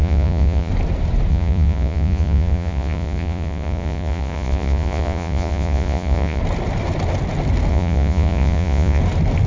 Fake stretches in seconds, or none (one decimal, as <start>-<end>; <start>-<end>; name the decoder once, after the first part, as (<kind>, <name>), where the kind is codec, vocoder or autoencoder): 0.0-0.7 (vocoder, Vocos); 1.3-6.4; 7.7-9.0